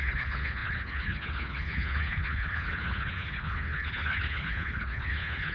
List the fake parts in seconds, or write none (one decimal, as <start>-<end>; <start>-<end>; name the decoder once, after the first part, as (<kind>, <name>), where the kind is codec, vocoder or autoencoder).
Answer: 0.0-5.5 (codec, HILCodec)